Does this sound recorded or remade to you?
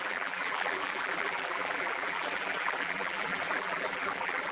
remade